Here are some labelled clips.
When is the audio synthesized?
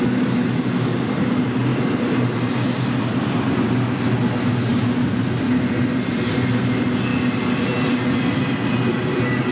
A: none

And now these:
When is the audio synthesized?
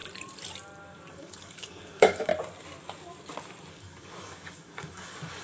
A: 1.1-2.3; 3.7-5.4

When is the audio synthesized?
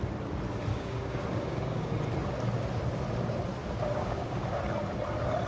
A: 0.7-1.9; 3.6-4.6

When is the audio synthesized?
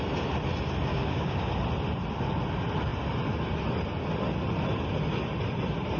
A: 0.9-1.6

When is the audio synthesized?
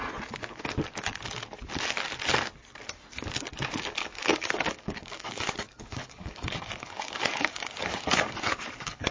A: 4.1-9.1